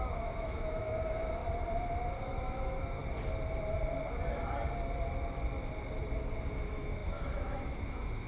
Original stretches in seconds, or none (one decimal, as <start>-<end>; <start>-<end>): 1.4-2.2; 3.0-6.5